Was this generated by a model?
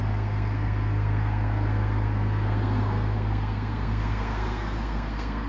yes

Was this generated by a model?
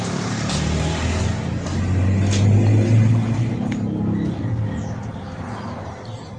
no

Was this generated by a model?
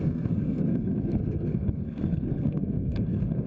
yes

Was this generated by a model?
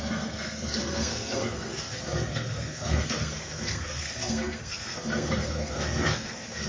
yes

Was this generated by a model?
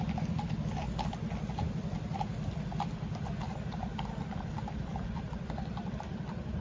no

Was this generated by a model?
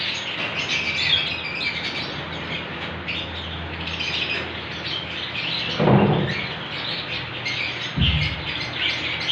no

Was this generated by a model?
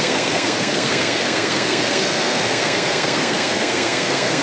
yes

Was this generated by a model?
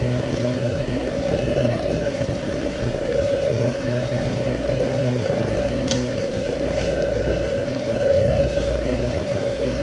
yes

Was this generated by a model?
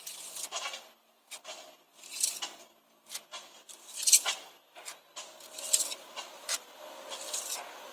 no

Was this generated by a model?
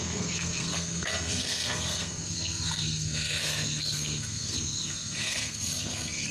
yes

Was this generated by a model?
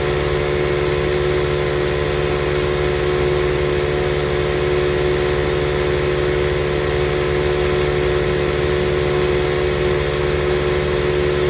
no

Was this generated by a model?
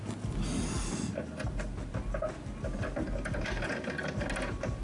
no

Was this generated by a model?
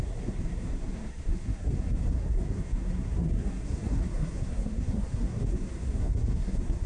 yes